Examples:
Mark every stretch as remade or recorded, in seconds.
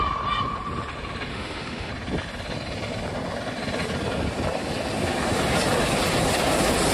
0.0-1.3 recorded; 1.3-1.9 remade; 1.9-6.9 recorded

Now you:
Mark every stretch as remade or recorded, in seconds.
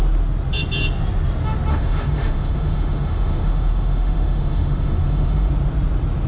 0.0-1.7 recorded; 1.7-5.5 remade; 5.5-6.3 recorded